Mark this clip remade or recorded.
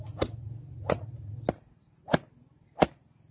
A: recorded